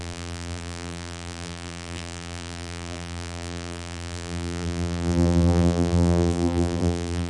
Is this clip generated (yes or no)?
yes